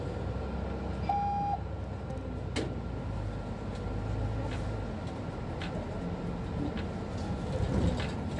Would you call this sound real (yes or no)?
yes